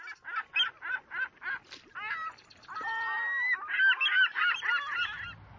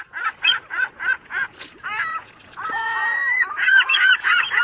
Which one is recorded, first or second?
first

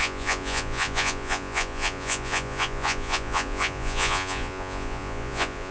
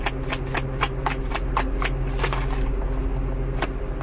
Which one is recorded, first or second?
second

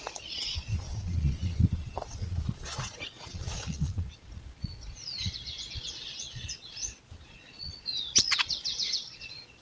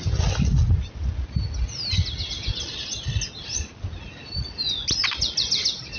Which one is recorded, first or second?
second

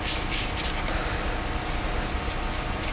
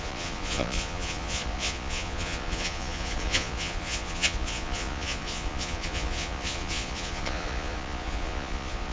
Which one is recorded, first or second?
first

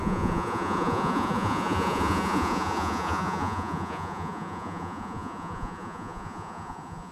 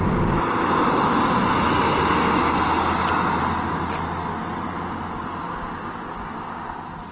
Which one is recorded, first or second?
second